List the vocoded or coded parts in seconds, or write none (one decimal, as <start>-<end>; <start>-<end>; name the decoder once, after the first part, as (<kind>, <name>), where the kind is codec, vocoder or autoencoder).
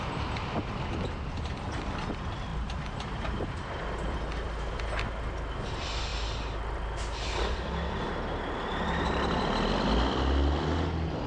2.5-3.8 (vocoder, BigVGAN v2)